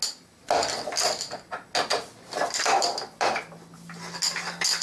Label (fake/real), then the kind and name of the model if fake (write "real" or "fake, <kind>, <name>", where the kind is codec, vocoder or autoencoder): real